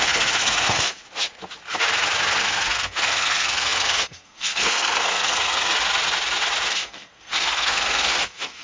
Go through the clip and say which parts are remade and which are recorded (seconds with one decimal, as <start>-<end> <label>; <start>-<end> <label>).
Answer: 0.0-1.0 remade; 1.0-2.4 recorded; 2.4-5.7 remade; 5.7-6.7 recorded; 6.7-8.6 remade